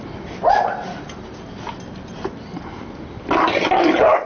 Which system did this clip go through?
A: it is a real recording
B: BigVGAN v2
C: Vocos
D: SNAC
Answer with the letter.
A